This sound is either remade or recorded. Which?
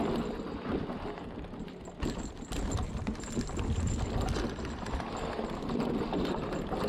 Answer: recorded